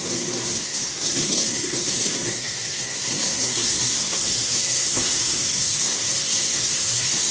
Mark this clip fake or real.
fake